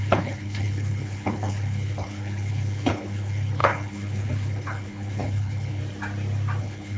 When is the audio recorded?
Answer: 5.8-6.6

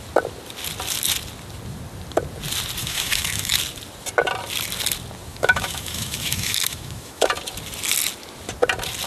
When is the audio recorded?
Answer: 0.0-2.8; 3.5-5.3; 7.3-9.1

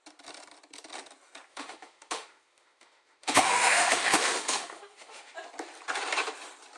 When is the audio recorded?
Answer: 0.0-1.5; 5.3-6.8

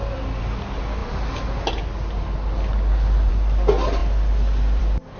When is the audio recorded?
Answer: 0.0-5.2

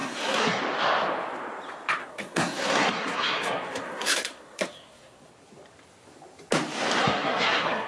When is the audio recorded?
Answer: 0.6-2.0; 5.3-7.0